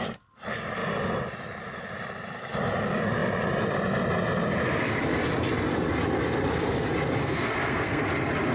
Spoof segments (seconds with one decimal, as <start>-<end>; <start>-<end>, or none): 7.2-8.0